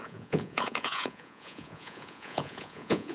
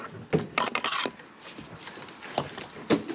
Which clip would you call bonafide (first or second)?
second